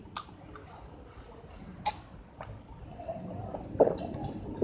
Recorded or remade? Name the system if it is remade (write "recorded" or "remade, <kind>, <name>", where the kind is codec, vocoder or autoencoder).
recorded